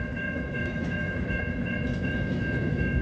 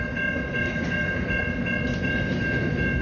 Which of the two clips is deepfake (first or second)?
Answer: first